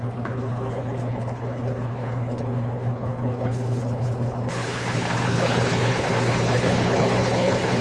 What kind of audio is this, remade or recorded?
remade